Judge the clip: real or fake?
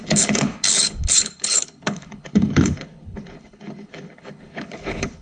fake